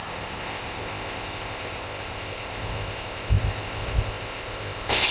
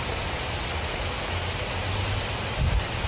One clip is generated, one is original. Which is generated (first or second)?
first